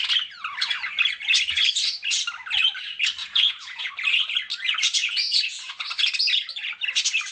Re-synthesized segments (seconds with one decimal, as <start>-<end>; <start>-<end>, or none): 3.2-3.9; 5.0-5.7